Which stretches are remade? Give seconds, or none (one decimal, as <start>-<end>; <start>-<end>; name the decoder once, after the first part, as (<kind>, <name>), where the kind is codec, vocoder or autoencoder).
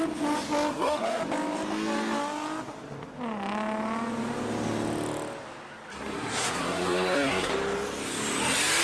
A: 0.7-1.2 (codec, SNAC); 5.9-7.5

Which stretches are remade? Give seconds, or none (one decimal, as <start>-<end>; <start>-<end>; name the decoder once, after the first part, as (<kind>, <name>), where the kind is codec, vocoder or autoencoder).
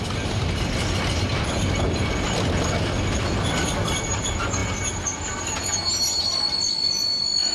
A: none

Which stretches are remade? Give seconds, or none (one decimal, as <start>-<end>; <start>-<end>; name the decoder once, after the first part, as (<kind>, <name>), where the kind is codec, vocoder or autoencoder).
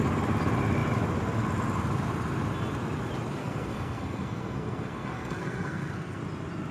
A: 3.4-6.2 (codec, SNAC)